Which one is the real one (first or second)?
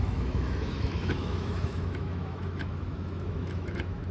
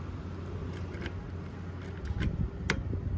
second